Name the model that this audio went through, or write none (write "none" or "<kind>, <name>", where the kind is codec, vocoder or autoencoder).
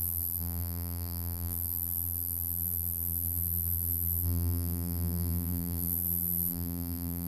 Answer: vocoder, BigVGAN v2